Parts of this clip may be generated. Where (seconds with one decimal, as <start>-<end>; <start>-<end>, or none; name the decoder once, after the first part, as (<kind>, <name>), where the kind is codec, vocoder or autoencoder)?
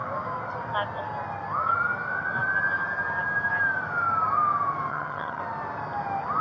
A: 4.9-5.4 (vocoder, HiFi-GAN)